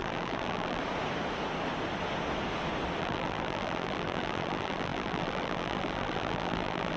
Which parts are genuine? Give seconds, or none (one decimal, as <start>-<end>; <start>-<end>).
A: 0.8-3.0